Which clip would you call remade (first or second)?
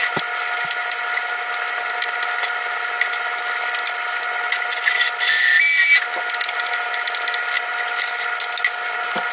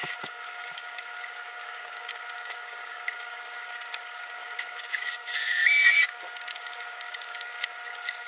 second